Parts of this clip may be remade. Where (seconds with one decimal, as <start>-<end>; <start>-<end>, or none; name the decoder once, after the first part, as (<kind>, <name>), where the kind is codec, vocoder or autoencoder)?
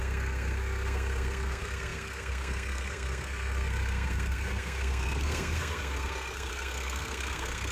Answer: 0.0-7.7 (codec, SNAC)